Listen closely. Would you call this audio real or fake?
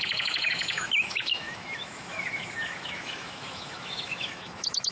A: fake